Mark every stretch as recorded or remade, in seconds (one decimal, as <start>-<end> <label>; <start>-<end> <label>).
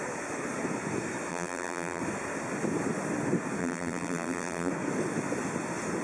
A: 0.0-1.3 recorded; 1.3-2.0 remade; 2.0-3.6 recorded; 3.6-4.7 remade; 4.7-6.0 recorded